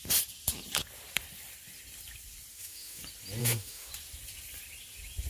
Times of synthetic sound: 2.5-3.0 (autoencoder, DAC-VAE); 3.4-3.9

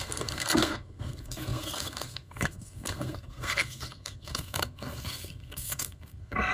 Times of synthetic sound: 0.0-6.5 (codec, SNAC)

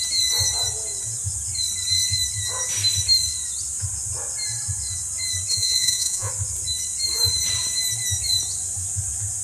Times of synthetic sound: 5.5-6.3 (vocoder, Vocos)